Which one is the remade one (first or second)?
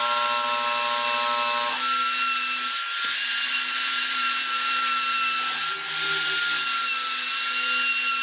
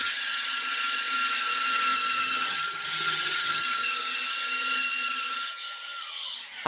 second